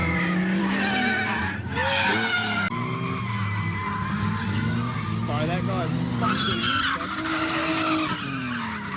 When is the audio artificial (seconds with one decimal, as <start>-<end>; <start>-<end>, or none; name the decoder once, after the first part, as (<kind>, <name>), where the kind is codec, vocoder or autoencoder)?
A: 0.0-0.6 (vocoder, BigVGAN v2)